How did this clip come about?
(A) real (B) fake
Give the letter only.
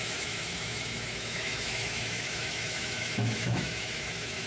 B